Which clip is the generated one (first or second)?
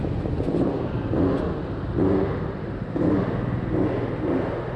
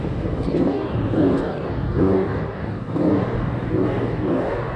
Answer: second